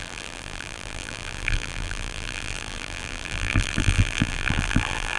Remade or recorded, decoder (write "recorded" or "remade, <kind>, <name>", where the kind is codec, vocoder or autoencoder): remade, vocoder, BigVGAN v2